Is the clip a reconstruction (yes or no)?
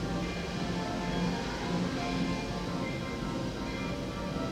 no